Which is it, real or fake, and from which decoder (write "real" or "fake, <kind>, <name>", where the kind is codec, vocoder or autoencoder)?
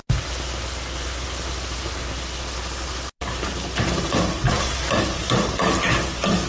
real